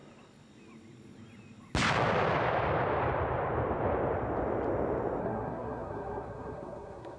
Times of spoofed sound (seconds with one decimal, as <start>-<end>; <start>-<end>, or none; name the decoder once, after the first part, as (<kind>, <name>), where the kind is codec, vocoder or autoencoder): 5.2-7.2 (codec, SNAC)